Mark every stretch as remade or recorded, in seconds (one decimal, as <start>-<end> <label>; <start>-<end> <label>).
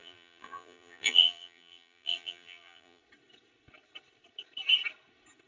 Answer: 0.0-3.0 remade; 3.0-5.5 recorded